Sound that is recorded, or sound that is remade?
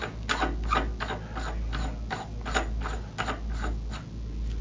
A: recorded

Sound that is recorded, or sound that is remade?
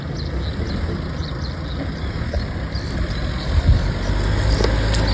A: recorded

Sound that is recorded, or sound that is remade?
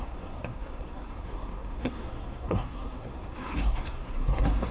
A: remade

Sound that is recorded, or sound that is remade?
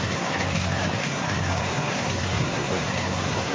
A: remade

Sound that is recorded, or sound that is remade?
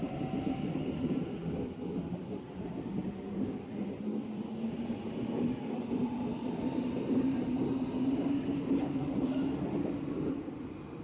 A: recorded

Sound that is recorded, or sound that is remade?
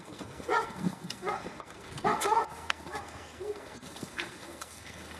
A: remade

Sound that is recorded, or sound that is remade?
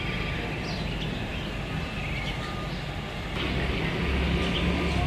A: recorded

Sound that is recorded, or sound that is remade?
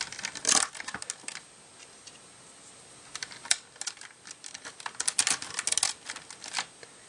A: recorded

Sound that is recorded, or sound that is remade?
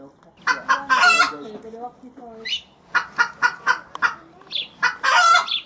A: recorded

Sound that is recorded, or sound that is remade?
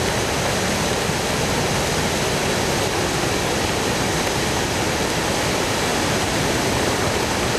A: recorded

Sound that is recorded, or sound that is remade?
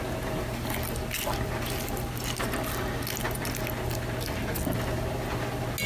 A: recorded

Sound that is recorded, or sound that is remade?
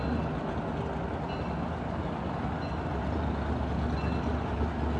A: recorded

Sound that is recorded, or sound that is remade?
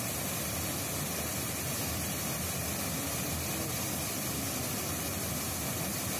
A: recorded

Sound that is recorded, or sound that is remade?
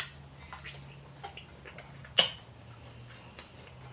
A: recorded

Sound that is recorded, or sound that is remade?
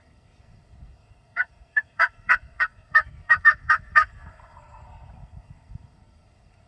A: remade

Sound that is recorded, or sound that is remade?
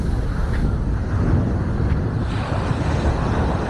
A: recorded